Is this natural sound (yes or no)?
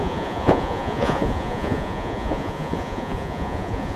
no